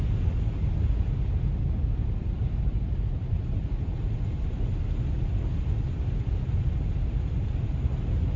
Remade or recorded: recorded